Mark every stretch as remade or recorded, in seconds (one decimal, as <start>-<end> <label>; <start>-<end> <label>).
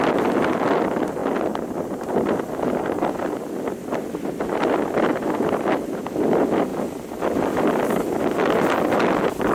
0.0-9.5 recorded